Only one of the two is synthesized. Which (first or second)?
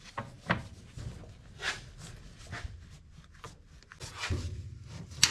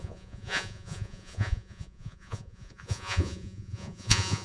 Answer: second